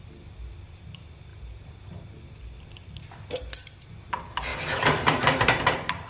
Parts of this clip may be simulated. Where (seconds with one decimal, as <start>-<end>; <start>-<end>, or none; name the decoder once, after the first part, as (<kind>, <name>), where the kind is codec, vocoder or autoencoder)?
1.3-3.9 (vocoder, BigVGAN v2); 4.5-6.1